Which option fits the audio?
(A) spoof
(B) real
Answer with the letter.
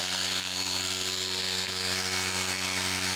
A